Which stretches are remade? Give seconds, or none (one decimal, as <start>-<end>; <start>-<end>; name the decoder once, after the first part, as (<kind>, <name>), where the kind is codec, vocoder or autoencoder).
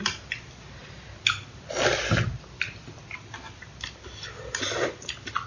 none